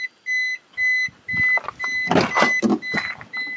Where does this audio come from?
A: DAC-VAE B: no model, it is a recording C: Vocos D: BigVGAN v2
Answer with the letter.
B